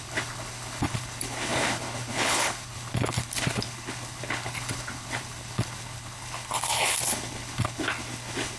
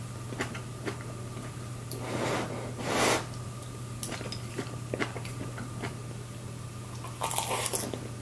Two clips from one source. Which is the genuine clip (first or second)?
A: second